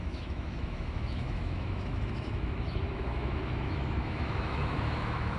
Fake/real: fake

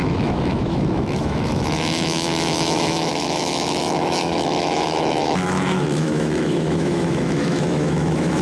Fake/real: fake